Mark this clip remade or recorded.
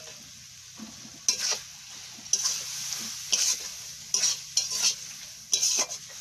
recorded